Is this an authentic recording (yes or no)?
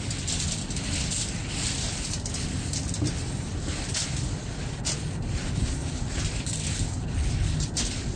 yes